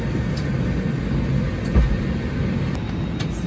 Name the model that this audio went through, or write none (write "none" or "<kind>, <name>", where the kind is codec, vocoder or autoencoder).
none